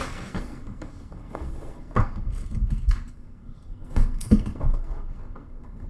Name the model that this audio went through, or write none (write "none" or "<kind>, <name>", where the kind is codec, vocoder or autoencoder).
codec, SNAC